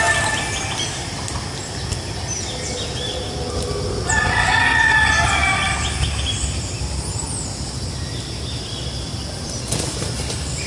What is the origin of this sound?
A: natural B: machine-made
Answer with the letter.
A